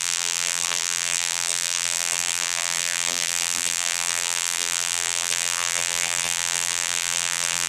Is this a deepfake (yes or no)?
yes